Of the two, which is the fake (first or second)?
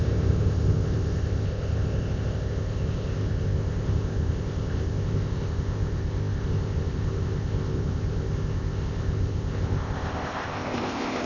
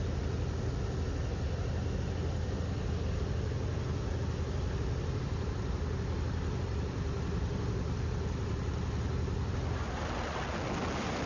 first